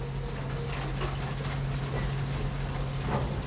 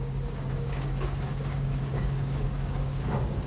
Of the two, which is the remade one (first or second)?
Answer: second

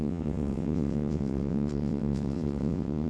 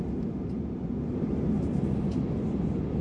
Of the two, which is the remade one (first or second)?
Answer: first